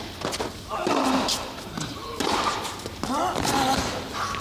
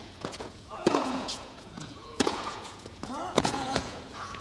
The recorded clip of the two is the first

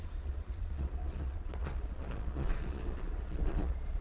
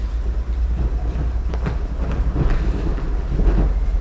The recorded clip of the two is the second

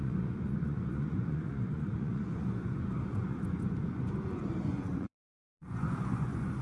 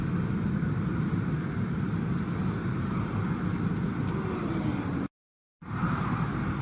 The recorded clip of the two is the second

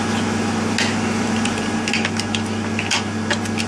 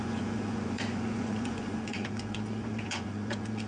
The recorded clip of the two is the first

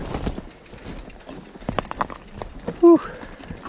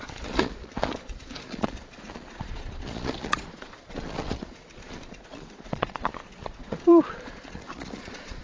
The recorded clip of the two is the first